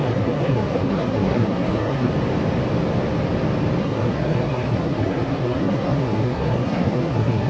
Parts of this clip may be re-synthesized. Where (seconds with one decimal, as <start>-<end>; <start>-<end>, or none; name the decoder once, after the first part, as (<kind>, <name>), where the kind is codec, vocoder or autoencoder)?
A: 0.0-2.1 (codec, SNAC); 3.8-7.5